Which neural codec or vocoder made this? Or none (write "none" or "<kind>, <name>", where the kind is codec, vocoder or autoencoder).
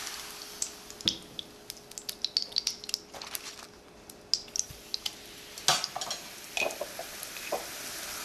none